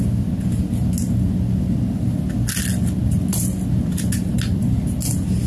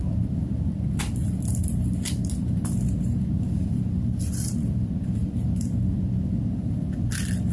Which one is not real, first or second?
second